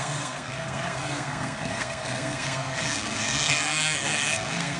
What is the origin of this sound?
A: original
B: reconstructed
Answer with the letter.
B